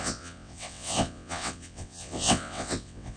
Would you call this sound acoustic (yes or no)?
no